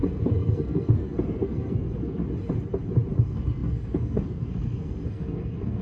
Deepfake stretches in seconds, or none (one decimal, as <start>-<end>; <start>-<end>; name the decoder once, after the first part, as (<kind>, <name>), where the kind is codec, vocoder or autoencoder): 0.0-2.2 (codec, SNAC); 3.1-5.8

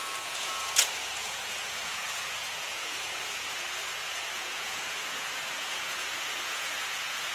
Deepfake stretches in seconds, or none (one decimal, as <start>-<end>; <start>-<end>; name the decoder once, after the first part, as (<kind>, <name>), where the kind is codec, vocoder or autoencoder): 0.0-7.3 (vocoder, Vocos)

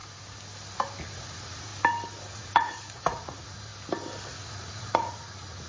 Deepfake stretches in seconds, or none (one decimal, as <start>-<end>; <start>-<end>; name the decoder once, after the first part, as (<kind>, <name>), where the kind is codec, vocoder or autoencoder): 1.0-1.7 (vocoder, Vocos); 2.3-3.7; 4.3-5.7

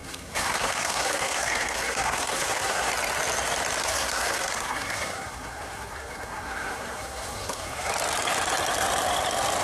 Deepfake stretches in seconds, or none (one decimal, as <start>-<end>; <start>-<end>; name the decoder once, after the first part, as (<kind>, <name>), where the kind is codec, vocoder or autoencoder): 0.0-2.9 (codec, SNAC); 3.8-7.9